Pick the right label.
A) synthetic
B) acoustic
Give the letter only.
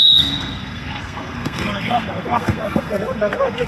A